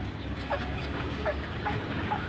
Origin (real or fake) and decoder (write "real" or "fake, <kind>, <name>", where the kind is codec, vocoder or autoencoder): fake, codec, DAC